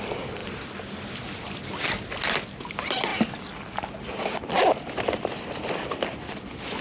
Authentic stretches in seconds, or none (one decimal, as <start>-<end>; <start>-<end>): 0.0-6.8